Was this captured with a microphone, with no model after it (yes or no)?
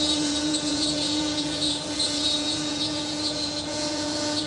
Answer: no